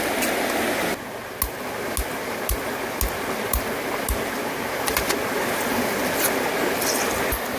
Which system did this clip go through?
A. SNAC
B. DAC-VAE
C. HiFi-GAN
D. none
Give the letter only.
D